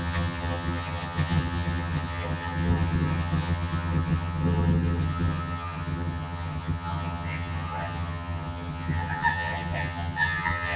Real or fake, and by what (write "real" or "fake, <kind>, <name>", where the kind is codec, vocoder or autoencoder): fake, vocoder, HiFi-GAN